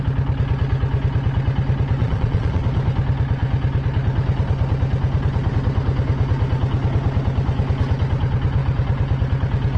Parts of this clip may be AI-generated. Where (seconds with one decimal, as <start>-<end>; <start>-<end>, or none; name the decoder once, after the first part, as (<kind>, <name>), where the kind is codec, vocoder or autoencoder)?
2.0-2.6 (vocoder, Vocos)